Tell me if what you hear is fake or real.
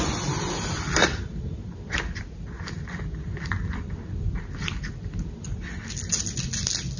real